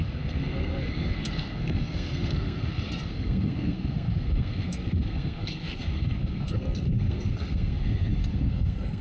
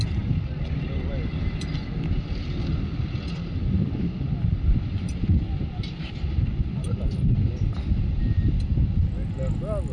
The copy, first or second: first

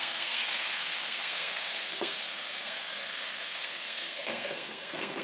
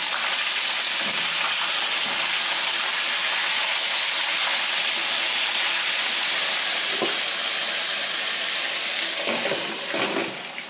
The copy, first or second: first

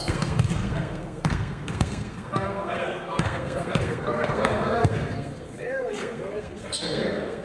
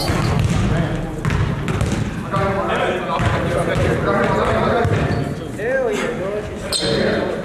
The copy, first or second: first